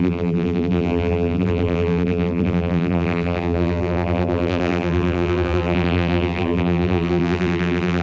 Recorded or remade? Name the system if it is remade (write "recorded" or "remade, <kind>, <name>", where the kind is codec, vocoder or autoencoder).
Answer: remade, vocoder, BigVGAN v2